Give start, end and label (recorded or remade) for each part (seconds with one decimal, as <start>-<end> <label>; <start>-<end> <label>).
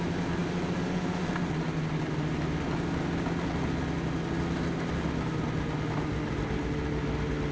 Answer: 0.0-7.5 recorded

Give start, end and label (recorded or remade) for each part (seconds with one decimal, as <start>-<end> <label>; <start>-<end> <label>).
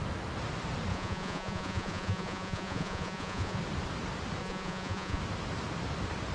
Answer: 0.0-0.9 recorded; 0.9-3.6 remade; 3.6-4.4 recorded; 4.4-5.2 remade; 5.2-6.3 recorded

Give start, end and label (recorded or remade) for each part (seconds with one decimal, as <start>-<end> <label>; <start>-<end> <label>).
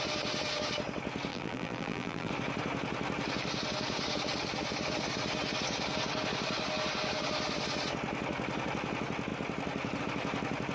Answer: 0.0-1.3 recorded; 1.3-2.3 remade; 2.3-10.7 recorded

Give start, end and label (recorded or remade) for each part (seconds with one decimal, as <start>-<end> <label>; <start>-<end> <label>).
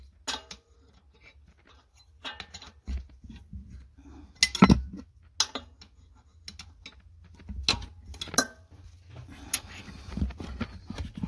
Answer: 0.0-11.3 recorded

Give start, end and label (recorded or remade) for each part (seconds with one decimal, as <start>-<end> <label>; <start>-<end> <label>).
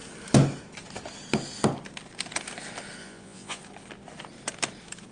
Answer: 0.0-3.0 recorded; 3.0-3.6 remade; 3.6-5.1 recorded